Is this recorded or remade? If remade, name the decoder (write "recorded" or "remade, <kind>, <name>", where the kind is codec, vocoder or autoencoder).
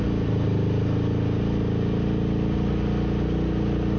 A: recorded